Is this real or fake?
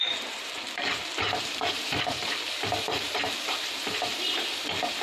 fake